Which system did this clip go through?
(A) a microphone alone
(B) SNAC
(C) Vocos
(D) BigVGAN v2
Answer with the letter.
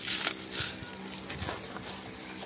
A